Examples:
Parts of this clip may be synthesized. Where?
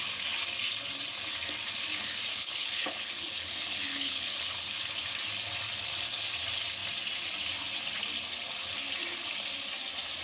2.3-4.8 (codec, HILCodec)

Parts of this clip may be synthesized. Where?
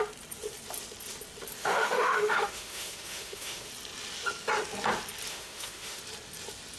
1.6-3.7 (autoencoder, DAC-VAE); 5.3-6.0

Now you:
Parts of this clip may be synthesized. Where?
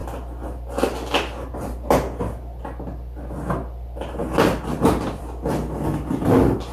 none